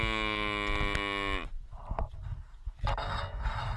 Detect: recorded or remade recorded